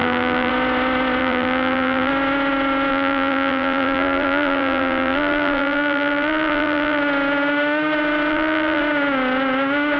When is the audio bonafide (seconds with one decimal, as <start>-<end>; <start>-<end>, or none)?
0.5-1.2; 2.1-2.9; 7.0-8.3; 8.8-10.0